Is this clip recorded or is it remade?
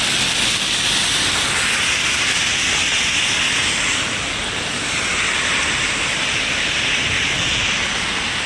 recorded